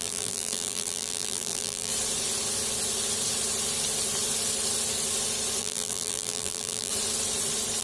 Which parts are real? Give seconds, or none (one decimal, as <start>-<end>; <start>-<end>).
1.9-5.6; 6.9-7.8